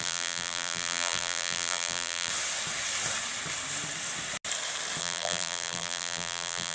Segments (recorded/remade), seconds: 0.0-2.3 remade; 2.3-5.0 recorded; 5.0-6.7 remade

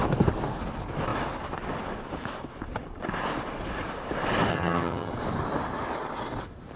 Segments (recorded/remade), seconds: 0.0-4.5 recorded; 4.5-5.1 remade; 5.1-6.8 recorded

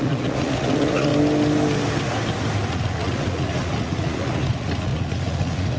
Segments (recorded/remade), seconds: 0.0-1.1 remade; 1.1-2.7 recorded; 2.7-5.8 remade

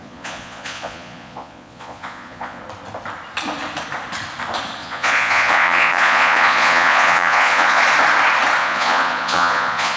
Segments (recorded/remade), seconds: 0.0-2.6 remade; 2.6-4.8 recorded; 4.8-7.8 remade; 7.8-8.6 recorded; 8.6-10.0 remade

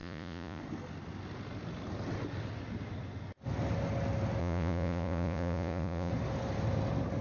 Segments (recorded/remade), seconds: 0.0-0.6 remade; 0.6-4.4 recorded; 4.4-6.1 remade; 6.1-7.2 recorded

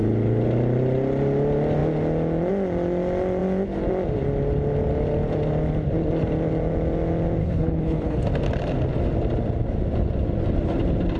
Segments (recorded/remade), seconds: 0.0-7.4 recorded; 7.4-8.2 remade; 8.2-11.2 recorded

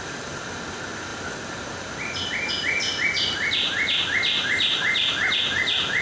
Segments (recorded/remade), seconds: 0.0-6.0 recorded

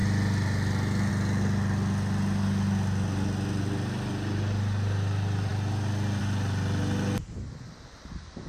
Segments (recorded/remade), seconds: 0.0-8.5 recorded